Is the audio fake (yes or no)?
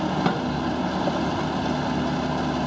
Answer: no